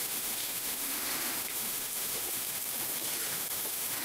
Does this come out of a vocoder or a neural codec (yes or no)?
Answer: yes